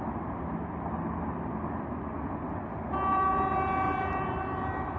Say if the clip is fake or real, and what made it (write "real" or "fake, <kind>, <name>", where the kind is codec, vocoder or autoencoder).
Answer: real